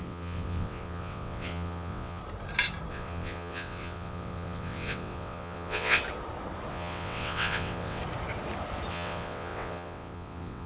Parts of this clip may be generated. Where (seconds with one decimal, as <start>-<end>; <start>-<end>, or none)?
0.0-2.2; 2.9-6.0; 6.7-8.0; 8.9-10.7